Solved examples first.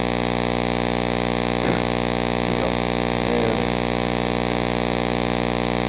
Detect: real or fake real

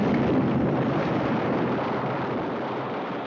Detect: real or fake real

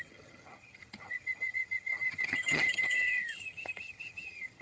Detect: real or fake fake